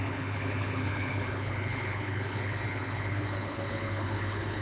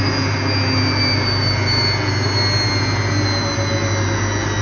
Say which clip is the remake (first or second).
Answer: first